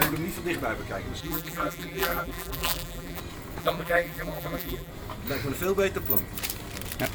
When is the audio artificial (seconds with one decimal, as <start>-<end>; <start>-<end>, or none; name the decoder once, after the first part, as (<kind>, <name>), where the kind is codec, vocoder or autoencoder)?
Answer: 1.2-3.2 (vocoder, BigVGAN v2); 3.6-4.9